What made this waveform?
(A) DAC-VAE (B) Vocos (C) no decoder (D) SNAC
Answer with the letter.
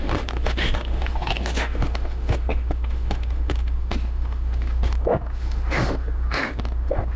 A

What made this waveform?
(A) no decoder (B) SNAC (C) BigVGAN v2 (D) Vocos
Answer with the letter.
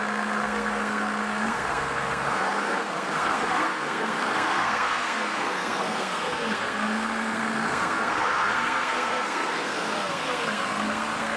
B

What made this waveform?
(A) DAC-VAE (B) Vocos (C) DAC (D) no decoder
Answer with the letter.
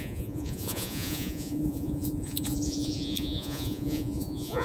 B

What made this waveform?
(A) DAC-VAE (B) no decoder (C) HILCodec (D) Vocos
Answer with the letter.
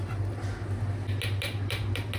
B